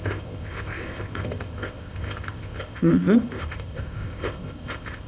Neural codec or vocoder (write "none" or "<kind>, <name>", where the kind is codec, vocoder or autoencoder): codec, ZipCodec